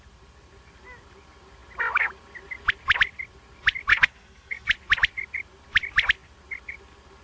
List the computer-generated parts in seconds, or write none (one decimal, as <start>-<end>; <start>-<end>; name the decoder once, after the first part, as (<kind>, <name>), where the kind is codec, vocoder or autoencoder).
3.9-4.7 (codec, SNAC)